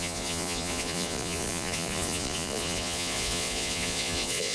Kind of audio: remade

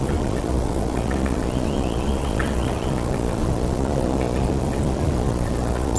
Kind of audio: remade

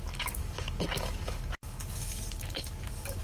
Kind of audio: remade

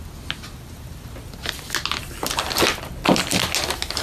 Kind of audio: recorded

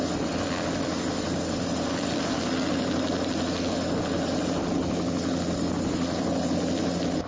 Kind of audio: recorded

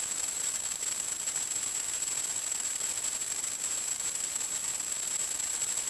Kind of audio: remade